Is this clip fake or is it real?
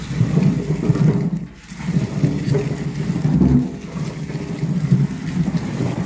real